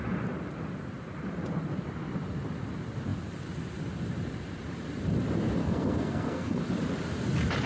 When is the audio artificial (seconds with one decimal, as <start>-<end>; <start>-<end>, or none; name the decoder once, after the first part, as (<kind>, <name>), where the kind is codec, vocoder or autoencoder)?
5.6-6.6 (codec, SNAC)